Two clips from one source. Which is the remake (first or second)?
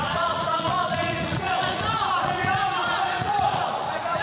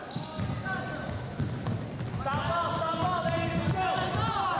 first